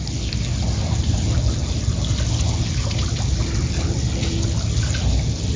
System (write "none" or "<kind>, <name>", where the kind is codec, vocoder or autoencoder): none